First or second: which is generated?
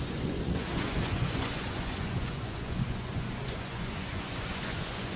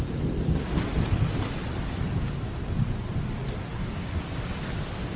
first